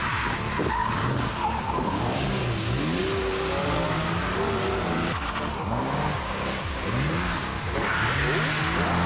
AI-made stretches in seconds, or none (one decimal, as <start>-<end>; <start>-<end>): 0.8-2.4; 5.8-8.6